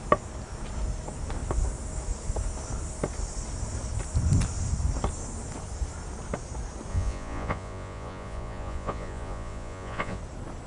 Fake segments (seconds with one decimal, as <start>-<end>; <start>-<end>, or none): 6.9-10.2